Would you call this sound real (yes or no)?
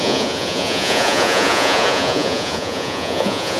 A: no